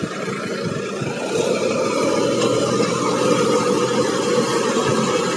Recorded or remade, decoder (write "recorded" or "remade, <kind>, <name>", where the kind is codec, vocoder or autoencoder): recorded